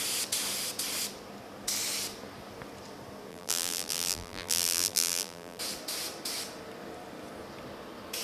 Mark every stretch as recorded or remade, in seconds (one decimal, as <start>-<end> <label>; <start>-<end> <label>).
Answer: 0.0-3.3 recorded; 3.3-5.6 remade; 5.6-8.2 recorded